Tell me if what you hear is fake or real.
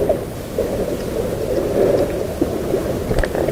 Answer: real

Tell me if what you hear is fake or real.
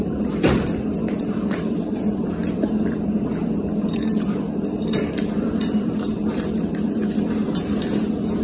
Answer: fake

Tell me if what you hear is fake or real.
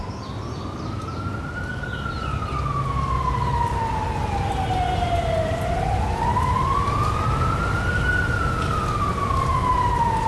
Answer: real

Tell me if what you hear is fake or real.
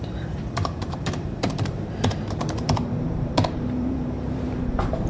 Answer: fake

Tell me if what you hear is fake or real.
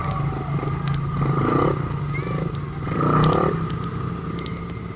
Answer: real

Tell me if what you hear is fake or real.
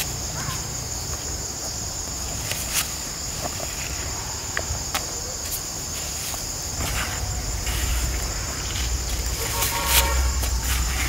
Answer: fake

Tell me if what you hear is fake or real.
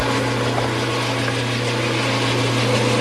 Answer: real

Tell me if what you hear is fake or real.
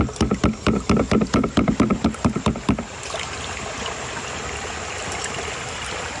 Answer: real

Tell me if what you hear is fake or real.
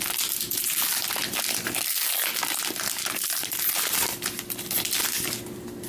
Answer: real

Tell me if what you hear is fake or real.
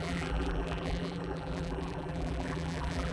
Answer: fake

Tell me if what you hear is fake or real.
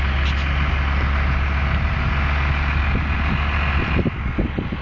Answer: real